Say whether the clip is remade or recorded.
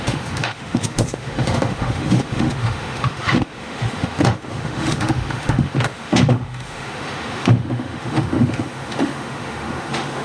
remade